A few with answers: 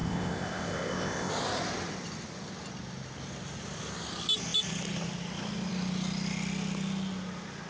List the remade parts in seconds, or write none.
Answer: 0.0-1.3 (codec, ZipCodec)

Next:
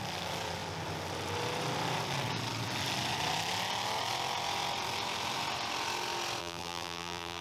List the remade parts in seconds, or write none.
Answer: 6.4-7.4 (vocoder, BigVGAN v2)

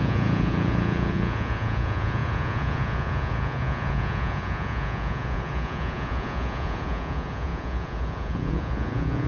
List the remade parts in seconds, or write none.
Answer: 0.0-9.3 (vocoder, Vocos)

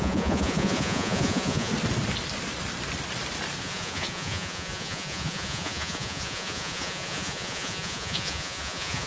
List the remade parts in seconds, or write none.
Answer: 0.0-1.7 (vocoder, Vocos); 3.6-9.1